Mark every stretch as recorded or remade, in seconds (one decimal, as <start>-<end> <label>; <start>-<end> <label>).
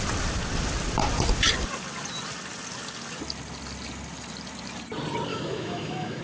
0.0-5.3 recorded; 5.3-6.2 remade